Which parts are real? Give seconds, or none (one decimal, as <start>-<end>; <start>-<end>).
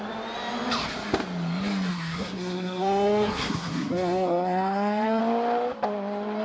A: 0.0-1.9; 5.2-6.4